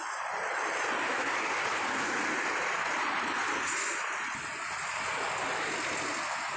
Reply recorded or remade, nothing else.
recorded